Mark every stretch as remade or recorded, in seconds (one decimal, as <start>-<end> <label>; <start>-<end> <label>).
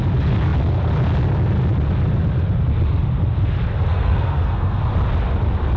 0.0-3.9 recorded; 3.9-4.8 remade; 4.8-5.8 recorded